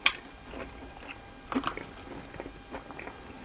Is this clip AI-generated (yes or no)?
no